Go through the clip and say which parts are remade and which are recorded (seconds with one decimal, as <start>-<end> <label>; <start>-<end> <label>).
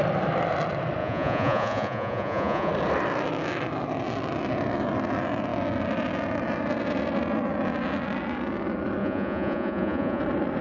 0.0-1.0 recorded; 1.0-2.7 remade; 2.7-9.0 recorded; 9.0-10.2 remade; 10.2-10.6 recorded